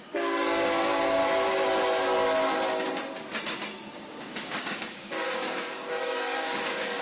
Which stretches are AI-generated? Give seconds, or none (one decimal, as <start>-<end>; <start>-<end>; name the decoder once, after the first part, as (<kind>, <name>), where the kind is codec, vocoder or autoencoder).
0.0-1.2 (codec, DAC); 3.9-7.0